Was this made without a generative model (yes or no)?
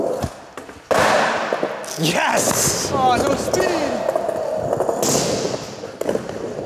yes